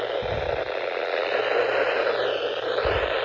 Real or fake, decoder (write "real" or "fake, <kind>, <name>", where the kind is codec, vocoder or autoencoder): real